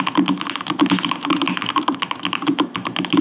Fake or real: real